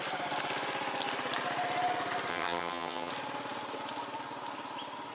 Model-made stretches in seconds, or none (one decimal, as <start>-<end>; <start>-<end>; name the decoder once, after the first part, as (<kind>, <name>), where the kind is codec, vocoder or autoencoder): 2.3-3.1 (vocoder, HiFi-GAN)